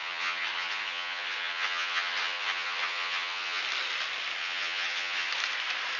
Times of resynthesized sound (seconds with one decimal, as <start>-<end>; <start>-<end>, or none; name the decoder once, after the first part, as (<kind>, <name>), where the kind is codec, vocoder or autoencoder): 0.0-3.6 (vocoder, HiFi-GAN); 4.4-5.3